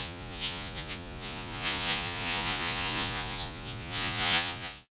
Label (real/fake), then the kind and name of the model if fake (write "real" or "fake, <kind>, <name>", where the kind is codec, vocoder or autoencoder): fake, vocoder, Vocos